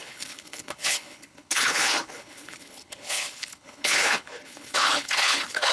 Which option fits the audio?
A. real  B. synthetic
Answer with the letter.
B